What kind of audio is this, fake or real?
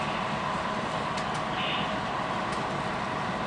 real